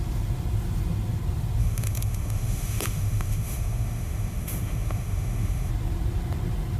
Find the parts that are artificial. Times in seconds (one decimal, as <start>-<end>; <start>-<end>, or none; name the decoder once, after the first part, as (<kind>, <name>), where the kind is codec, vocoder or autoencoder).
1.6-5.7 (autoencoder, DAC-VAE)